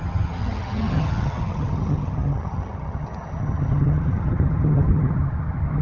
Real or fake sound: fake